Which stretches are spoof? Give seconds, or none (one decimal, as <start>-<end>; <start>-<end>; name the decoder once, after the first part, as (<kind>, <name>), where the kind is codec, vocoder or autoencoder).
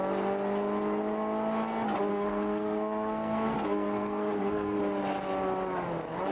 2.1-4.8 (codec, SNAC)